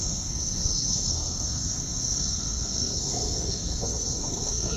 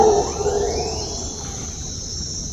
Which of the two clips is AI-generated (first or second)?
first